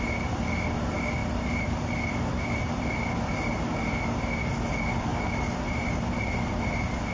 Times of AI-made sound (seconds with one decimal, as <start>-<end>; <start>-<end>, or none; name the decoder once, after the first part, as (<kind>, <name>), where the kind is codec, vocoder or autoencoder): 1.2-4.1 (vocoder, BigVGAN v2); 5.1-6.6